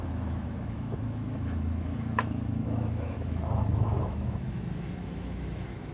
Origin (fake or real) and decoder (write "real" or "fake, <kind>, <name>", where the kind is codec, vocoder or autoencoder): fake, autoencoder, DAC-VAE